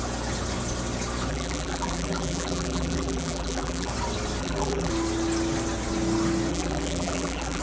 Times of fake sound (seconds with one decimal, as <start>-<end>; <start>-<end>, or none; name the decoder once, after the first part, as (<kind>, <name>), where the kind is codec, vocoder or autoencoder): 1.3-3.9 (vocoder, BigVGAN v2); 4.4-4.9; 6.5-7.6